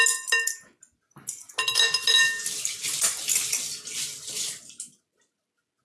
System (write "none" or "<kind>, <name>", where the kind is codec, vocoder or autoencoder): none